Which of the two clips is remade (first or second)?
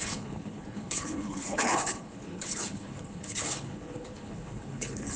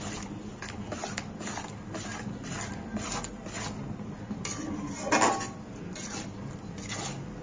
first